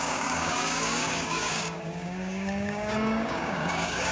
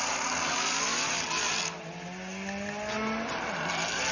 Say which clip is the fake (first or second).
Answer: first